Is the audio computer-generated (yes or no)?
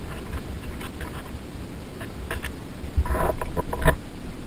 no